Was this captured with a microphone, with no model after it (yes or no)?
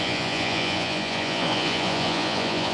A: no